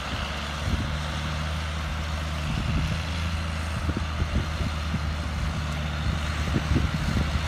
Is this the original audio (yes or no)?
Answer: yes